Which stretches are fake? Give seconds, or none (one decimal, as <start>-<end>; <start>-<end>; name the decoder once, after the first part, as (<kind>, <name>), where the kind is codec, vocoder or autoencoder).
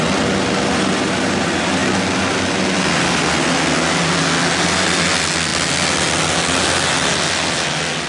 none